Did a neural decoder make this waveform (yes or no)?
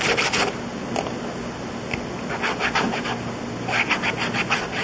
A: no